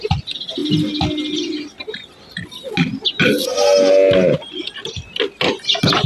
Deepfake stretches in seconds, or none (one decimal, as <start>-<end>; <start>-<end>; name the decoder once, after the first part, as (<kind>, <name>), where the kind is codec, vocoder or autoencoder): none

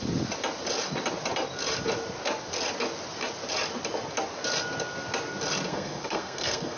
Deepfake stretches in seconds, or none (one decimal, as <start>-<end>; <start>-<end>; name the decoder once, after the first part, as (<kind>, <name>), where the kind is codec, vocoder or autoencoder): 5.7-6.8 (codec, SNAC)

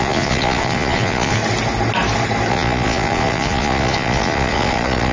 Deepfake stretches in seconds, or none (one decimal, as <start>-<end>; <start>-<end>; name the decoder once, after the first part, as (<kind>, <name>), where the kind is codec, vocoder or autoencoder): 0.0-1.4 (vocoder, Vocos); 2.5-5.1

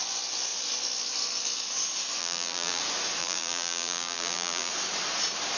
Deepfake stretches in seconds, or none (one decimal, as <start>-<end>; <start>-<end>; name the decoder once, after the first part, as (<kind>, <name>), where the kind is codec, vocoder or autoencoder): 2.2-2.8 (vocoder, BigVGAN v2); 3.2-4.7

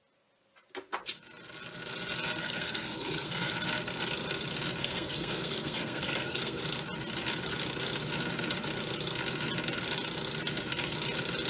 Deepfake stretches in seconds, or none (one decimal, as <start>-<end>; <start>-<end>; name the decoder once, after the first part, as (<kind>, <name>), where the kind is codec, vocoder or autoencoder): 2.4-3.5 (codec, SNAC); 4.8-6.6

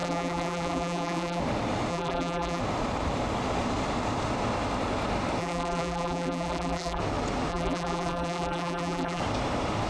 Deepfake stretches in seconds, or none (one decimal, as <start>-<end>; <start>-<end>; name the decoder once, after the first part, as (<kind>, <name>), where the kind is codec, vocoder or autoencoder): 0.0-1.4 (vocoder, BigVGAN v2); 1.9-2.6; 5.4-7.0; 7.5-9.2